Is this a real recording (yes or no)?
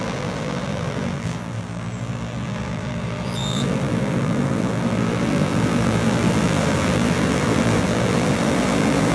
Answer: no